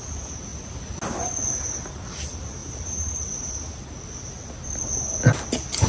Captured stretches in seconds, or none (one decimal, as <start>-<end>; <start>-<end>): 0.0-2.6; 3.6-5.9